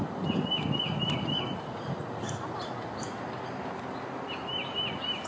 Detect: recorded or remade recorded